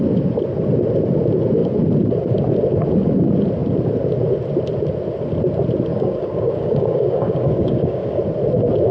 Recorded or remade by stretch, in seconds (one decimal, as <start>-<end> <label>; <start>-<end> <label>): 0.0-5.9 recorded; 5.9-8.2 remade; 8.2-8.9 recorded